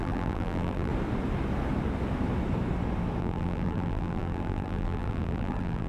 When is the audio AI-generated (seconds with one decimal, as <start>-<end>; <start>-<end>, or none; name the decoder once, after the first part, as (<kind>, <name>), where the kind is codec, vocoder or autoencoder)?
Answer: 0.0-0.9 (vocoder, BigVGAN v2); 3.2-5.9